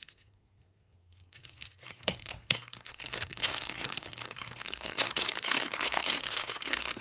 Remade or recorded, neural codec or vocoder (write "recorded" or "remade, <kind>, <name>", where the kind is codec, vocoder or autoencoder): remade, codec, SNAC